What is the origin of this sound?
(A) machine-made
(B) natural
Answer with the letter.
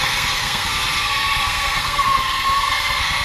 A